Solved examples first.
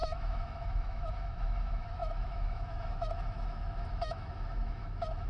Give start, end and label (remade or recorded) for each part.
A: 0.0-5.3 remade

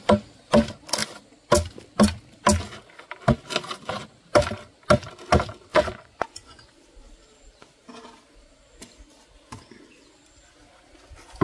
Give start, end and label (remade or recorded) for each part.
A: 0.0-5.7 recorded; 5.7-6.8 remade; 6.8-11.4 recorded